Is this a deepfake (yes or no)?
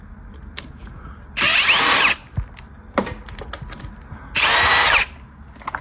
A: no